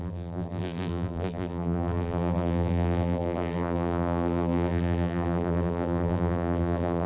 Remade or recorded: remade